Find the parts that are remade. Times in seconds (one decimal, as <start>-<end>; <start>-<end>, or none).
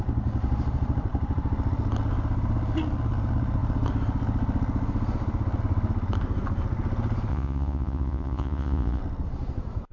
7.3-9.0